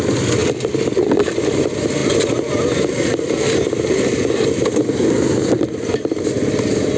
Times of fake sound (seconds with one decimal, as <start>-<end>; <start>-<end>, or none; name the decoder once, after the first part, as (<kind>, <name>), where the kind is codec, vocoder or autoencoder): none